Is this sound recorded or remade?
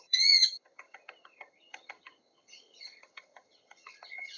remade